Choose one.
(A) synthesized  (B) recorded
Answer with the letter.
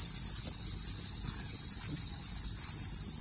B